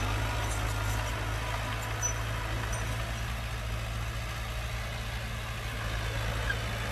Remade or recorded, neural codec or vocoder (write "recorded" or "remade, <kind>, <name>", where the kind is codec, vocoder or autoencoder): recorded